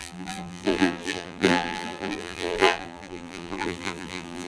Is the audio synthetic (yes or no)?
yes